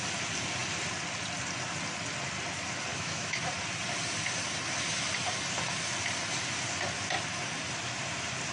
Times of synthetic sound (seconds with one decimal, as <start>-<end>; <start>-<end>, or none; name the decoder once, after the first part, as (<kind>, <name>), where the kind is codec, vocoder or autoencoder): 2.9-3.4 (autoencoder, DAC-VAE)